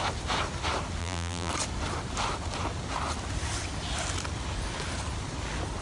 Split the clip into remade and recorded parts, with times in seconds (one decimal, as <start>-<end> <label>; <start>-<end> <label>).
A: 0.0-1.0 recorded; 1.0-1.5 remade; 1.5-5.8 recorded